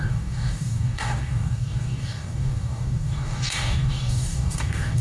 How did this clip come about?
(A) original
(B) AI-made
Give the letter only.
B